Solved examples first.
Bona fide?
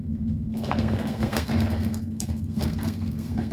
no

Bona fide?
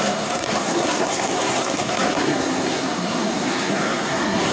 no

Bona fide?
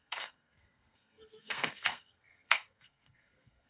no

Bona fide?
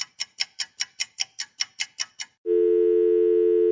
yes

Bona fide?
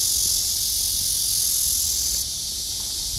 yes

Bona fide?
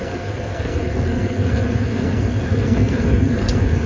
no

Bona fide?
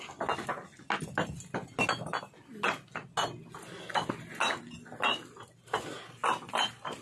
yes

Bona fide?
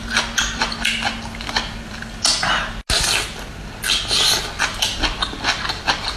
yes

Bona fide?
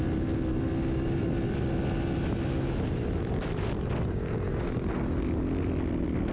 yes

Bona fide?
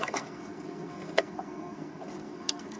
no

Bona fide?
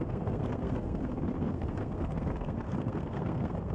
no